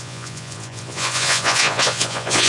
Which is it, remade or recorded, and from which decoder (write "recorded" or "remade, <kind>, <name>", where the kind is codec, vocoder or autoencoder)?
remade, vocoder, Vocos